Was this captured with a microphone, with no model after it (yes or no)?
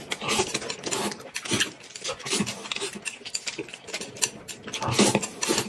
yes